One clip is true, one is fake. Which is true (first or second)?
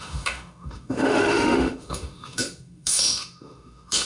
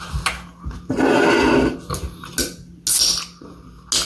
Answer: second